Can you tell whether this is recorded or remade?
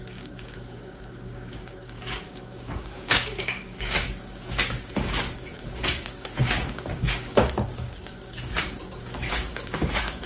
remade